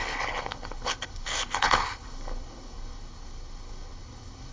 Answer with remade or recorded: remade